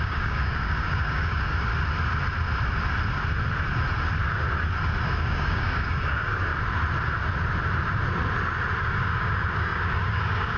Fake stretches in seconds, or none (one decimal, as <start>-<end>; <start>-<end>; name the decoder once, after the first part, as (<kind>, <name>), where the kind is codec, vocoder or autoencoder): 0.0-1.7 (codec, DAC); 5.1-6.5; 8.8-10.6